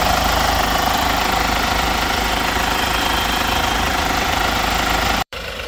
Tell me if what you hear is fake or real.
fake